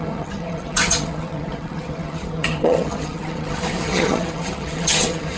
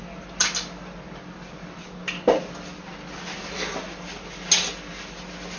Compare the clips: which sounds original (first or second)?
second